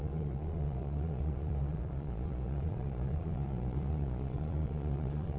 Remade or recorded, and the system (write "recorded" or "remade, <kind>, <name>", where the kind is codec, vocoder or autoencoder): remade, vocoder, Vocos